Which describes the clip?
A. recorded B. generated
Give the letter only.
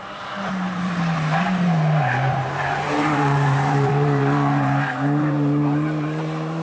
B